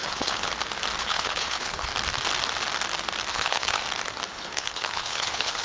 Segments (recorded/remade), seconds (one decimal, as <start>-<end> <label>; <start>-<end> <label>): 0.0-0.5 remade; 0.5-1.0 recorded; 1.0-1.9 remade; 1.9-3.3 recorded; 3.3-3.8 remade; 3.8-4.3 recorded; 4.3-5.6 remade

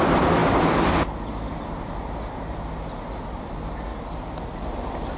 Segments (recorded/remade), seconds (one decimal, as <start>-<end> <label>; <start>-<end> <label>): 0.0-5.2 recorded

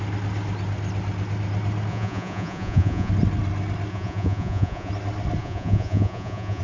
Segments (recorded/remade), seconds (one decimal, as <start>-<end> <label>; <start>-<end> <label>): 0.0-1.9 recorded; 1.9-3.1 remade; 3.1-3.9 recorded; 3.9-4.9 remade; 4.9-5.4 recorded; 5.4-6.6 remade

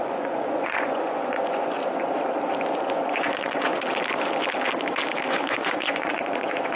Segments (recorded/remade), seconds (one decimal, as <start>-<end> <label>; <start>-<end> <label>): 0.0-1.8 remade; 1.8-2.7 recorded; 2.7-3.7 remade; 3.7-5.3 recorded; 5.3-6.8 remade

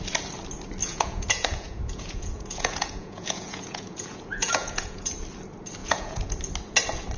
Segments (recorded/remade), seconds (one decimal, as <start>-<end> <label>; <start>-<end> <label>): 0.0-0.8 recorded; 0.8-5.1 remade; 5.1-5.8 recorded; 5.8-6.3 remade; 6.3-7.2 recorded